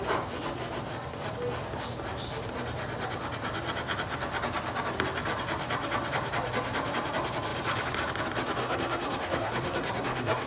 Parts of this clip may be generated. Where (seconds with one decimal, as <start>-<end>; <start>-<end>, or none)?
8.6-10.5